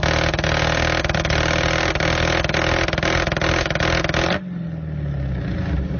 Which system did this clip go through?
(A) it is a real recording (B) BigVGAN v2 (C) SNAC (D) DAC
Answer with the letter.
A